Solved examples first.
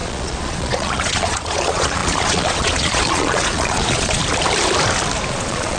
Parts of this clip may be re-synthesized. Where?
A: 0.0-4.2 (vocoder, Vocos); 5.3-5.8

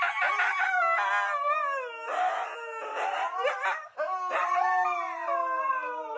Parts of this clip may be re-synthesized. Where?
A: none

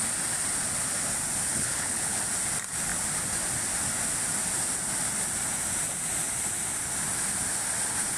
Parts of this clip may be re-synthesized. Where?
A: 1.5-2.2 (codec, HILCodec)

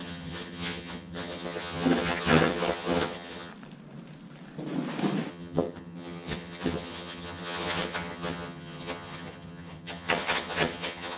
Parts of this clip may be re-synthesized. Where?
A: 0.0-3.5 (vocoder, HiFi-GAN); 5.3-11.2

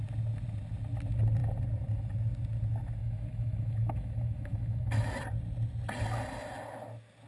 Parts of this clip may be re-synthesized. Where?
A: 3.0-5.1 (autoencoder, DAC-VAE)

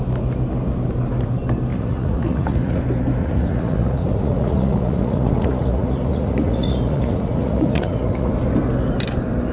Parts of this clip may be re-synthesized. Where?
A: 1.7-2.8 (vocoder, Vocos); 3.2-8.3

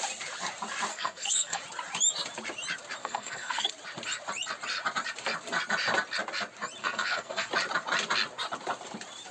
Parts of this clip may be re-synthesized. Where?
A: 0.9-1.6 (codec, SNAC); 3.0-3.7; 6.8-7.5